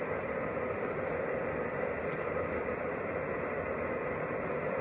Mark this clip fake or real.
fake